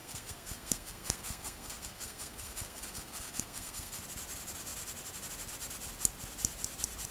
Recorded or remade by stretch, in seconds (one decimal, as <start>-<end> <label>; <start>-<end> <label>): 0.0-4.0 remade; 4.0-7.1 recorded